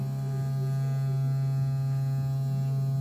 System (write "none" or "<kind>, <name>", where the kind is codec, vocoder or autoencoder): none